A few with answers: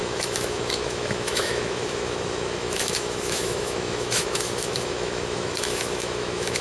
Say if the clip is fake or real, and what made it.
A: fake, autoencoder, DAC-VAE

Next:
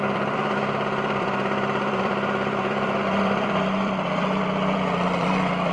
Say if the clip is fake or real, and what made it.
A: fake, vocoder, BigVGAN v2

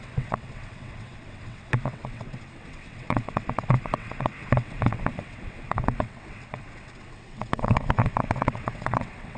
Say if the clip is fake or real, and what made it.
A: fake, vocoder, WaveNeXt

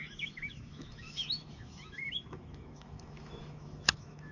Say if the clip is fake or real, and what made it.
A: fake, autoencoder, DAC-VAE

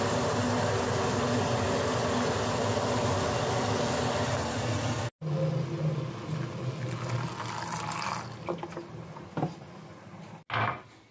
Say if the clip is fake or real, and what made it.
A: real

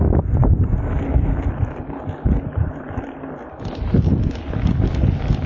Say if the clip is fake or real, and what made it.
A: real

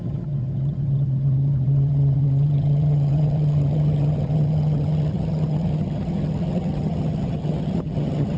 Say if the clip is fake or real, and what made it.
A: fake, vocoder, HiFi-GAN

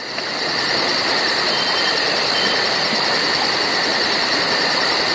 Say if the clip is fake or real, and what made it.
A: fake, vocoder, BigVGAN v2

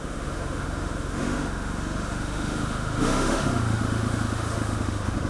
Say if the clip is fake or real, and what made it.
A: fake, autoencoder, DAC-VAE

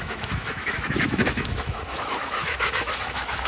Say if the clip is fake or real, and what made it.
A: fake, autoencoder, DAC-VAE